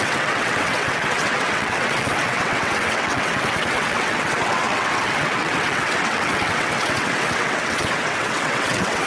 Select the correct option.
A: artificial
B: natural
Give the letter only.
A